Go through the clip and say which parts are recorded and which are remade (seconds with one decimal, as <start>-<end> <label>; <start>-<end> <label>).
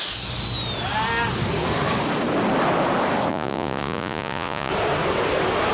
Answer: 0.0-3.3 recorded; 3.3-4.7 remade; 4.7-5.7 recorded